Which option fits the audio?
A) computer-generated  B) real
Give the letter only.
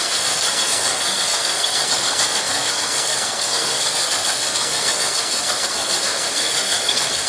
A